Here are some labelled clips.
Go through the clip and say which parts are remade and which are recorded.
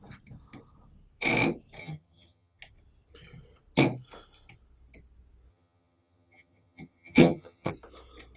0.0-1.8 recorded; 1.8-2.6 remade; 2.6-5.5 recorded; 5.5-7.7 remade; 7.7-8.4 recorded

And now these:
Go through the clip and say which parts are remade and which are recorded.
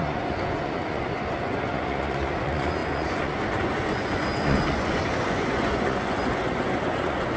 0.0-7.4 remade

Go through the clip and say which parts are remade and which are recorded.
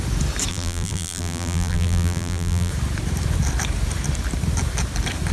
0.0-0.5 recorded; 0.5-2.7 remade; 2.7-5.3 recorded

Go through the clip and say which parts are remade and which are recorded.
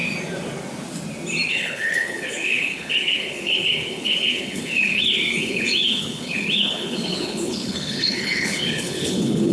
0.0-1.5 recorded; 1.5-9.5 remade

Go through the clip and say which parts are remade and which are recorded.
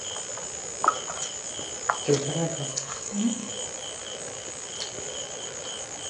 0.0-2.7 recorded; 2.7-3.5 remade; 3.5-6.1 recorded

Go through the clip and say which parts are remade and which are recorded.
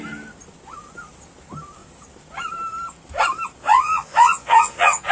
0.0-3.6 recorded; 3.6-5.1 remade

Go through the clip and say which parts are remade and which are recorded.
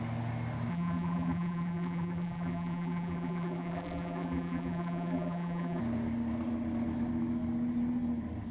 0.0-0.7 recorded; 0.7-5.8 remade; 5.8-8.5 recorded